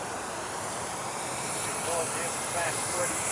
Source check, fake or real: fake